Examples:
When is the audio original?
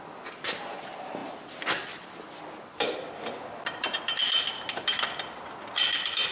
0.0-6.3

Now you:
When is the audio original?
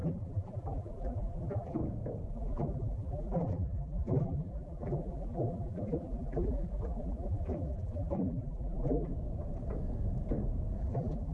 1.8-2.3; 9.1-10.8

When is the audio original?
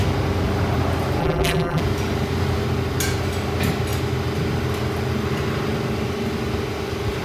0.0-1.2; 1.8-7.2